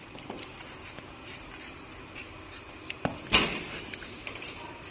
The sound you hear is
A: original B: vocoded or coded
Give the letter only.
A